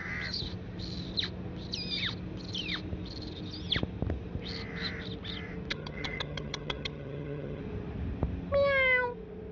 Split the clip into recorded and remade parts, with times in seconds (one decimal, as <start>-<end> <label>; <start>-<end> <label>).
0.0-5.7 recorded; 5.7-7.6 remade; 7.6-9.5 recorded